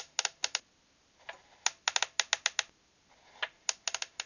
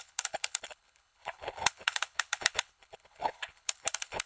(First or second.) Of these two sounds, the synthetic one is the second